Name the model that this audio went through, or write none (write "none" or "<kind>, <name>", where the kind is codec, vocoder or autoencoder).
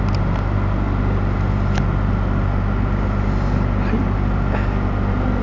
none